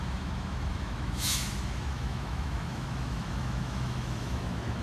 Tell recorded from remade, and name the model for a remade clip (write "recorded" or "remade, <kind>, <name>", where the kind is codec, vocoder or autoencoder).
remade, autoencoder, DAC-VAE